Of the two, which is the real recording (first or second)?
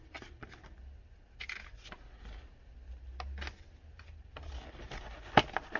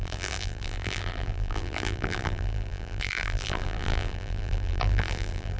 first